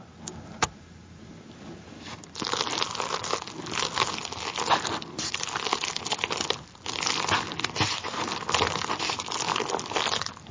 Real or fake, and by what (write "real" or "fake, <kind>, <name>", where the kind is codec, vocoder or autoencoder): real